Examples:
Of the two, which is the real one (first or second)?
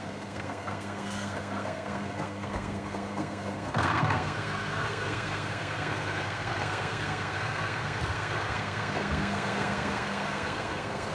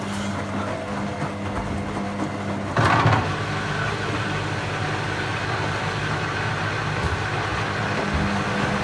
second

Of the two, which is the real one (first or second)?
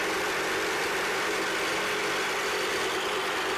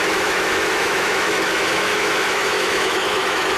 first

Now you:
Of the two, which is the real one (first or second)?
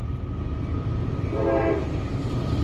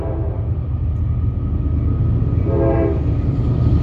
second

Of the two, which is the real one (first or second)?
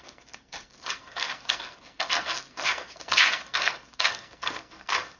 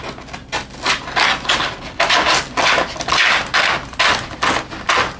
second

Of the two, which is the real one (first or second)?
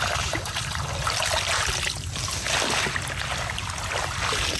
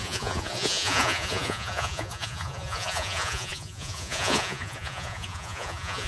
first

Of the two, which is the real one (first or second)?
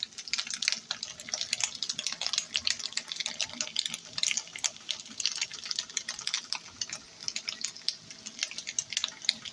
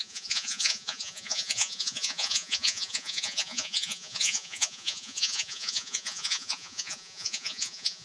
first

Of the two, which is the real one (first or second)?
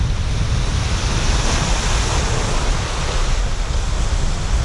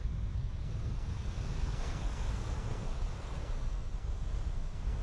first